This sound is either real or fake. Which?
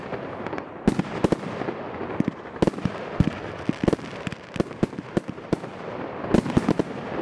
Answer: real